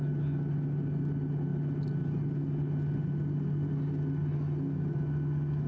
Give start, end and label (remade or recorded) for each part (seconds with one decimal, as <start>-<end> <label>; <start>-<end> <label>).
0.0-5.7 recorded

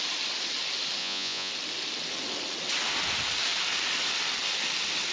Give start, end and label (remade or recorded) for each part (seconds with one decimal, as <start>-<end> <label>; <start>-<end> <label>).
0.0-1.0 recorded; 1.0-1.5 remade; 1.5-5.1 recorded

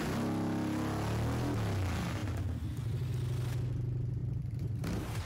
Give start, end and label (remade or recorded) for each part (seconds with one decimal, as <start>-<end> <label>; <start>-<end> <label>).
0.0-4.2 recorded; 4.2-5.3 remade

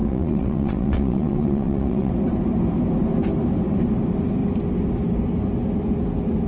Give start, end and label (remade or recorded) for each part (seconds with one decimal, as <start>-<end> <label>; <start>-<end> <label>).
0.0-2.1 remade; 2.1-6.5 recorded

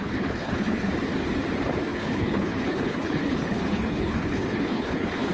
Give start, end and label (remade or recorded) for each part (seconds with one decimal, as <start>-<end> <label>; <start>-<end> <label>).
0.0-0.9 remade; 0.9-1.9 recorded; 1.9-5.3 remade